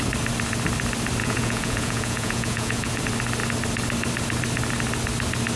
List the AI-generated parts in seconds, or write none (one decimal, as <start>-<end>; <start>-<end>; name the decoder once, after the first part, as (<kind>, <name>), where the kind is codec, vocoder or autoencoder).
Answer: 1.2-3.0 (vocoder, Vocos)